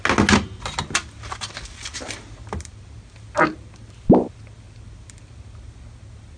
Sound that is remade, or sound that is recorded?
recorded